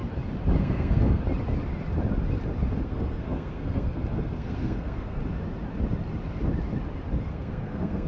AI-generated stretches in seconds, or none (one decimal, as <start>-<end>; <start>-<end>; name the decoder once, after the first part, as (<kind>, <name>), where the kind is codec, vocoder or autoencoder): 0.6-1.2 (codec, SNAC); 2.8-5.2; 7.3-8.1